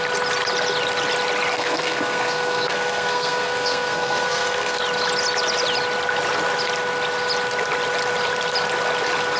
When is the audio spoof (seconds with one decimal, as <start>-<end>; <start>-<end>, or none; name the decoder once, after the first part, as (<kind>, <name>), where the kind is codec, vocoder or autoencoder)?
1.5-4.8 (codec, SNAC)